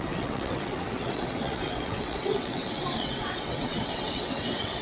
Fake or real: fake